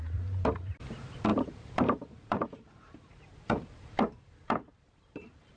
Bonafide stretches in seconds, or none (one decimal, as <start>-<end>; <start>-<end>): none